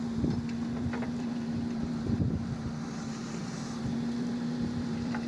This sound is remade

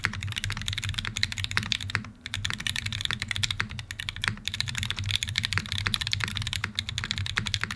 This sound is recorded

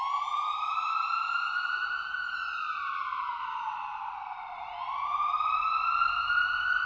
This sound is recorded